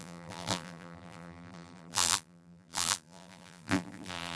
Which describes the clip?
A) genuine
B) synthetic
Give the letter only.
B